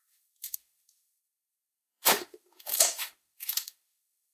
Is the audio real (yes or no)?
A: no